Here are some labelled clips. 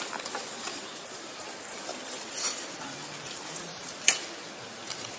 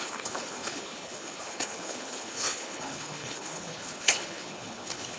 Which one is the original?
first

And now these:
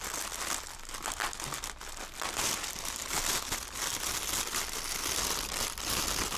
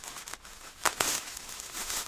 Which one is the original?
first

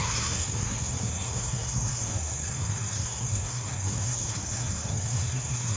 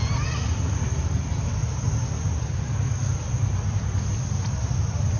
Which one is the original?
second